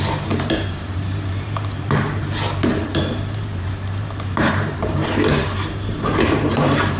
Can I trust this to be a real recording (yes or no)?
no